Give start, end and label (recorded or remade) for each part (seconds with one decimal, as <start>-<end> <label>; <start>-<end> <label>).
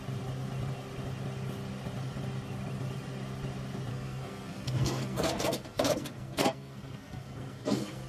0.0-3.9 recorded; 3.9-8.1 remade